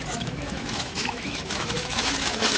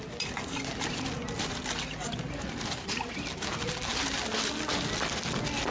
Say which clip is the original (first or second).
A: second